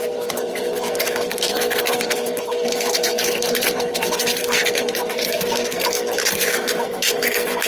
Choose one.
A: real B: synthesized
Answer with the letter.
B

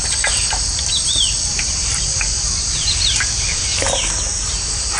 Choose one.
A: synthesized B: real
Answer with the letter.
B